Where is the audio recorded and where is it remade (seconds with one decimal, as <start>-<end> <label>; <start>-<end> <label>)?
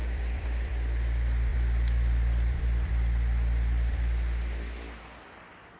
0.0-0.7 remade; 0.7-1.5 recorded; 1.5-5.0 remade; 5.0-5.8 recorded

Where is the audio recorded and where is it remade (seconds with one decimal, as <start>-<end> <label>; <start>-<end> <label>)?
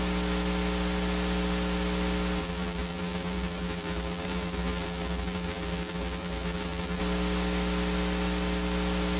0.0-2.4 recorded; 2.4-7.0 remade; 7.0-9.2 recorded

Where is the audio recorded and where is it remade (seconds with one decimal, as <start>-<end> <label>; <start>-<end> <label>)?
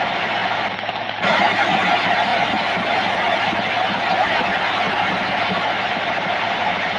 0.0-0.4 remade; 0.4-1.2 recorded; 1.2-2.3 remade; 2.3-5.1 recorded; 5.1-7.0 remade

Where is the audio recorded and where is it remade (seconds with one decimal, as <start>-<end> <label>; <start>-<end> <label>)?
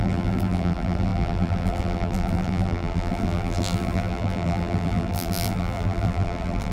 0.0-6.7 remade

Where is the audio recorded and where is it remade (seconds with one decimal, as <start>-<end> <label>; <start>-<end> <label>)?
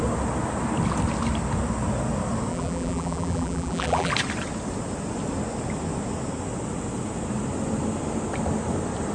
0.0-2.5 recorded; 2.5-4.1 remade; 4.1-9.1 recorded